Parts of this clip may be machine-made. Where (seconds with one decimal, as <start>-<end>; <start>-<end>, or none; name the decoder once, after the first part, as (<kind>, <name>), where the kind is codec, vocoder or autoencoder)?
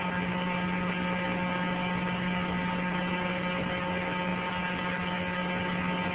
none